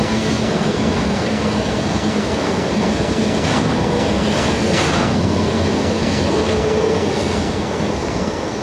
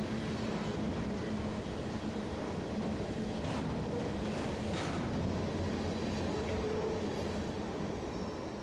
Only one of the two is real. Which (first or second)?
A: second